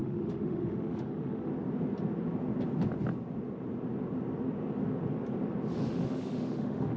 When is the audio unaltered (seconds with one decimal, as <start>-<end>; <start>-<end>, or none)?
1.5-5.7